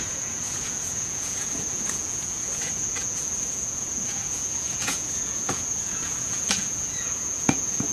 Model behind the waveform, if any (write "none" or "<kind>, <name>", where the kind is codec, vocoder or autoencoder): vocoder, Vocos